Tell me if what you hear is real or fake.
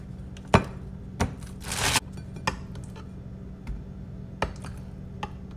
real